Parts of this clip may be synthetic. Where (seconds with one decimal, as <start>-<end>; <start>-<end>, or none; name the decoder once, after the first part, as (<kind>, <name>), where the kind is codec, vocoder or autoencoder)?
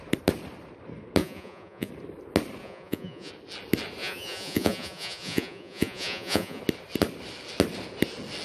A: 1.2-1.9 (vocoder, Vocos); 2.6-3.3; 4.0-6.6